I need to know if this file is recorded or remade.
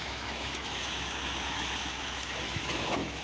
remade